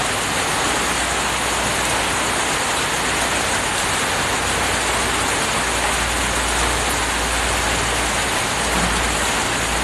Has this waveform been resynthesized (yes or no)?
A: no